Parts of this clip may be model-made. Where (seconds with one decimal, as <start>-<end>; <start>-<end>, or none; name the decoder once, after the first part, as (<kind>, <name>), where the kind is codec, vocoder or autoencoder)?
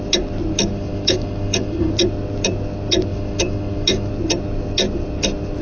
0.7-1.9 (autoencoder, DAC-VAE); 3.1-4.1